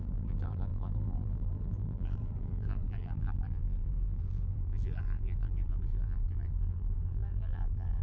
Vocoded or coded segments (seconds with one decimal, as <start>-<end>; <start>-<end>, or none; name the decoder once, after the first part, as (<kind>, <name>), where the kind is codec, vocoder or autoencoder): 0.0-8.0 (vocoder, BigVGAN v2)